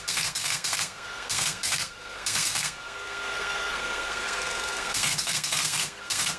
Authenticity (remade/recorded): remade